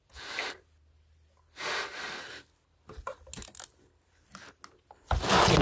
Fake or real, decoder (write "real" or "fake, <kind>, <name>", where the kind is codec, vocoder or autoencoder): real